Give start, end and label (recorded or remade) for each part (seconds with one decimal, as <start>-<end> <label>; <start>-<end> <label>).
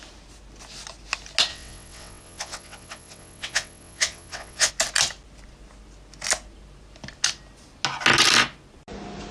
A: 0.0-1.5 recorded; 1.5-4.7 remade; 4.7-9.3 recorded